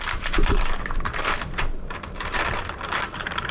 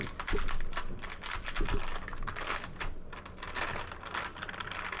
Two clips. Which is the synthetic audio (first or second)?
first